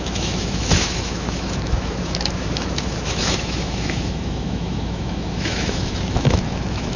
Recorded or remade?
remade